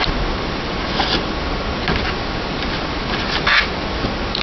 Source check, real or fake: real